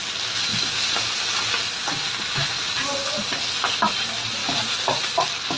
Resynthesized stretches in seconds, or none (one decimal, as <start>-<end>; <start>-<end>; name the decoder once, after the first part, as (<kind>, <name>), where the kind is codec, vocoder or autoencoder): none